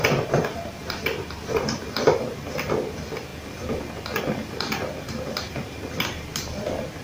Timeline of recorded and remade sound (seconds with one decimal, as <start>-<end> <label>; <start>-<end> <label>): 0.0-7.0 recorded